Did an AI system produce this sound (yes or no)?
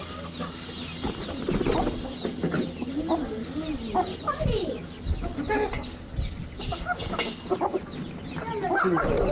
no